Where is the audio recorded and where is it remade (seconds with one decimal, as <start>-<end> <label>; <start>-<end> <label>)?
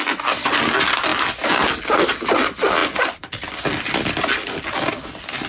0.0-2.8 recorded; 2.8-5.5 remade